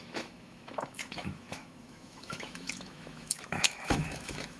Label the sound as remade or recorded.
remade